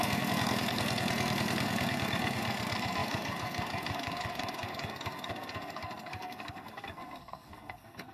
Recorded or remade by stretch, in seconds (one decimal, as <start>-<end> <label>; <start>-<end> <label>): 0.0-8.1 remade